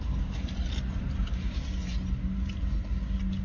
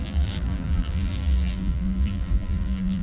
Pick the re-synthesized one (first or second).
second